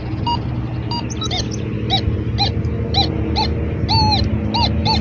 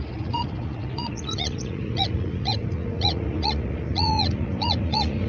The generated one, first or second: second